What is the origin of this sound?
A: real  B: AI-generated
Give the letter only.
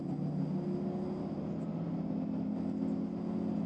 A